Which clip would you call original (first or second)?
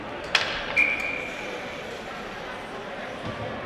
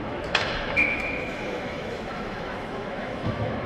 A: first